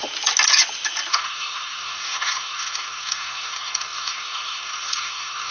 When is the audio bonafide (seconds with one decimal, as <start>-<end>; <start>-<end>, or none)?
0.0-1.1